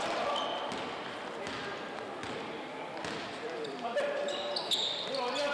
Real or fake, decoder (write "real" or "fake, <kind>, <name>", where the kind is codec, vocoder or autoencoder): real